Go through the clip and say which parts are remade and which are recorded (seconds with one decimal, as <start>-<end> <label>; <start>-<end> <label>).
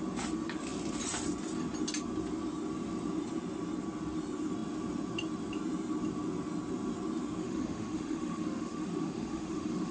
0.0-7.4 recorded; 7.4-9.9 remade